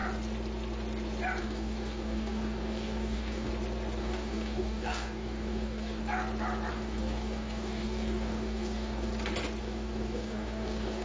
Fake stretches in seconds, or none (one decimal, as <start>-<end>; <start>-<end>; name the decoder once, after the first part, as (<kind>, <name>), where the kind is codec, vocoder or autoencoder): 1.4-3.5 (codec, DAC); 4.0-6.0; 6.7-9.1; 9.6-11.0